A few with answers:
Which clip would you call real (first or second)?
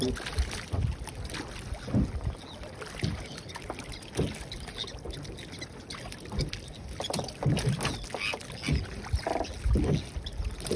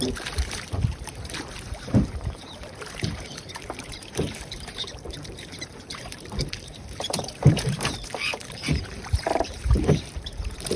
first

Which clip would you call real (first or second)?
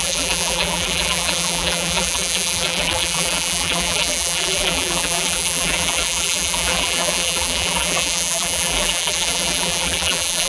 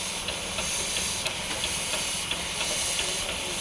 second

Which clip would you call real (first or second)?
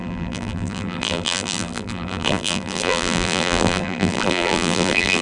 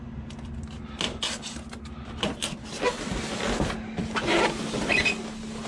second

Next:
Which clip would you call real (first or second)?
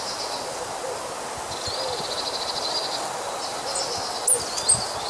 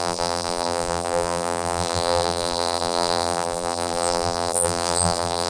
first